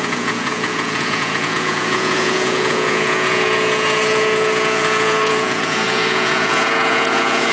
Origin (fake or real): fake